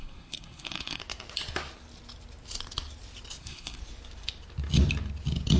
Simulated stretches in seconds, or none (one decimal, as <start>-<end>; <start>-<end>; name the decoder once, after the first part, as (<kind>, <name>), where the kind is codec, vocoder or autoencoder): 0.0-1.0 (codec, SNAC); 3.4-3.8

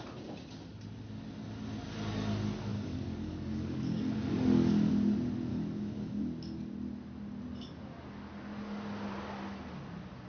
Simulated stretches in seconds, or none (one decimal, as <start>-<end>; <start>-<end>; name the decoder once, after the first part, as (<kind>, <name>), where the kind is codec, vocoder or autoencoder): 2.7-4.9 (codec, DAC); 5.5-6.2

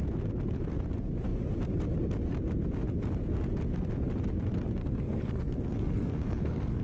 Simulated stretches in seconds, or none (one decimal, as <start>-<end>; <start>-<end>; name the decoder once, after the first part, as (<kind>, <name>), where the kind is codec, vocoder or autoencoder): 4.8-6.8 (codec, SNAC)

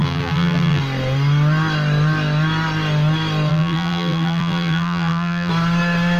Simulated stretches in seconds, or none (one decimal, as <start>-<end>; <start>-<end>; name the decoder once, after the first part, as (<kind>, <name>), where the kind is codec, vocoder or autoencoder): 0.0-0.8 (vocoder, BigVGAN v2); 3.5-5.5

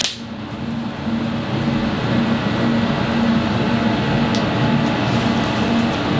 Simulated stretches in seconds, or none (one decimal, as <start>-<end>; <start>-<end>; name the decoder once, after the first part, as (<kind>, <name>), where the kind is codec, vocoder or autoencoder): none

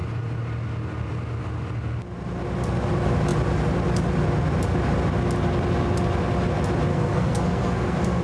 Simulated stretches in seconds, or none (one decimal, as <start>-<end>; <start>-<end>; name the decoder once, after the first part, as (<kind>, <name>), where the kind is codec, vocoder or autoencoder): 6.9-8.2 (codec, SNAC)

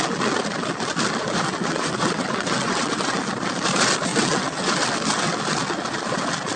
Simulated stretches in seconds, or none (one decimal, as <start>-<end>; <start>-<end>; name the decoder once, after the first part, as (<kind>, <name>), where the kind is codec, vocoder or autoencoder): 1.6-3.2 (vocoder, WaveNeXt); 4.1-4.7